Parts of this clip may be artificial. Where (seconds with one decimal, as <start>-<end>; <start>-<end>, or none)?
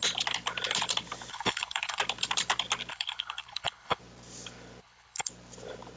1.3-2.0; 2.9-4.0; 4.8-5.3